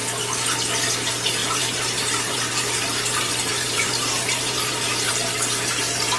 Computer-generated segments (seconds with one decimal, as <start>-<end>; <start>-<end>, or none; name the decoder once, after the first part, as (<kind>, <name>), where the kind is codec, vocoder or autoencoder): 1.4-5.1 (vocoder, BigVGAN v2)